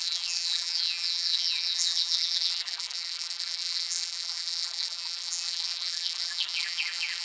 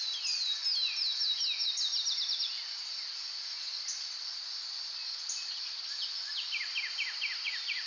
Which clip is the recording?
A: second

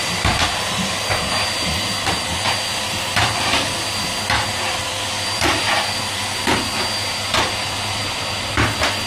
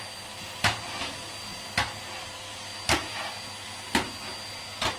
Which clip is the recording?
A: second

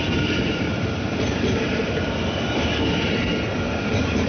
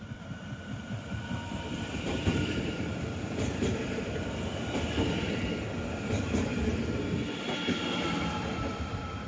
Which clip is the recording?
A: first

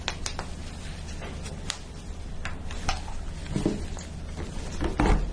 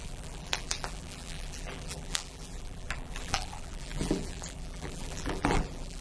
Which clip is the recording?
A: first